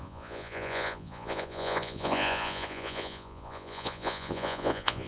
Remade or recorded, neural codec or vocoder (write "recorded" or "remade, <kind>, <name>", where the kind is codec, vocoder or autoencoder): remade, vocoder, Vocos